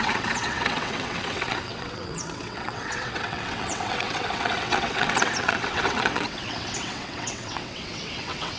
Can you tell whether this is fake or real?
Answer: fake